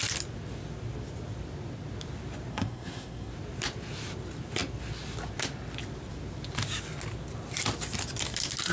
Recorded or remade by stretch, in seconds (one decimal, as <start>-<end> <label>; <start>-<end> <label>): 0.0-2.5 recorded; 2.5-3.3 remade; 3.3-8.7 recorded